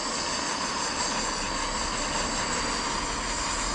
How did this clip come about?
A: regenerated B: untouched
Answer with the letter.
B